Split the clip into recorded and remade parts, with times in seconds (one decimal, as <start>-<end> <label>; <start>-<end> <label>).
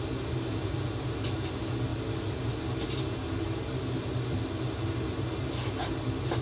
0.0-6.4 recorded